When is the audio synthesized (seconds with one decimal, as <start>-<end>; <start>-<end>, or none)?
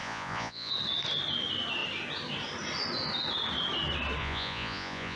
0.0-0.7; 4.2-5.2